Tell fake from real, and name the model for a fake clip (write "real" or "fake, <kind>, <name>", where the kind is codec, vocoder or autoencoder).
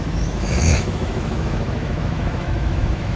fake, autoencoder, DAC-VAE